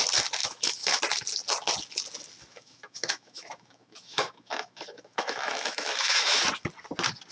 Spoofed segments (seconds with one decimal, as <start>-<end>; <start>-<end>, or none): 0.4-1.0; 2.5-6.4